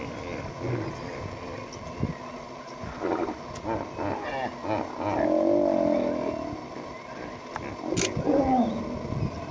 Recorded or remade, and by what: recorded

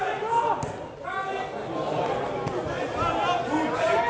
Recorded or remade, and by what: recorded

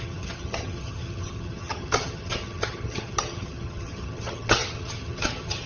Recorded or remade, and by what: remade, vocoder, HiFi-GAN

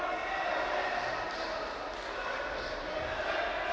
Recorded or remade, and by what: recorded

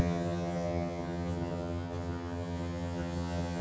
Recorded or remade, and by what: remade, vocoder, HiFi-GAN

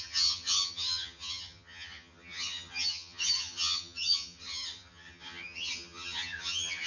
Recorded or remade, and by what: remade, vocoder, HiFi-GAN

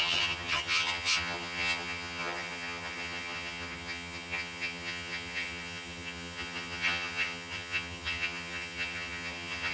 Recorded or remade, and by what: remade, vocoder, HiFi-GAN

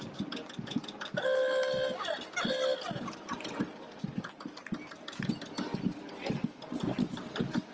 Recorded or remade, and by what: recorded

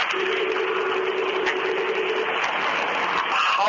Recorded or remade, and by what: recorded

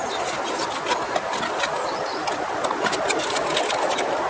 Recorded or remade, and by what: recorded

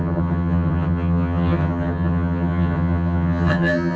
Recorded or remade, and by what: remade, vocoder, HiFi-GAN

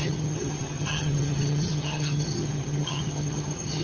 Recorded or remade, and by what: remade, vocoder, HiFi-GAN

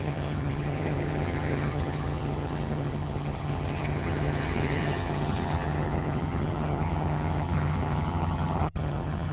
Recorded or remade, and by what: remade, vocoder, HiFi-GAN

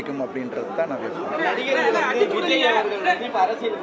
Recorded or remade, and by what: recorded